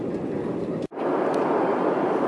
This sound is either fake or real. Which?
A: real